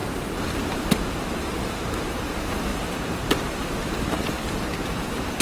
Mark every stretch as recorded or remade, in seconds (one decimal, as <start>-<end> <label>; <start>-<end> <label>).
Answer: 0.0-2.1 remade; 2.1-2.7 recorded; 2.7-4.6 remade; 4.6-5.4 recorded